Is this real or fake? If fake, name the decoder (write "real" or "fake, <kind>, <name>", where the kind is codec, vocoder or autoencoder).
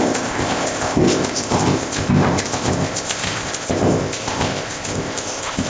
fake, codec, ZipCodec